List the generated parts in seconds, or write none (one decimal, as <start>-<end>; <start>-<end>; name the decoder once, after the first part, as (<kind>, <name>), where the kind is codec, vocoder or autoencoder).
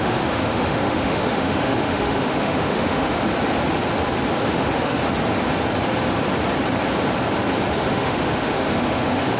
0.0-3.3 (autoencoder, DAC-VAE); 4.4-5.0; 7.7-9.4